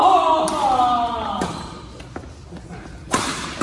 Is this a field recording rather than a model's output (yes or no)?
yes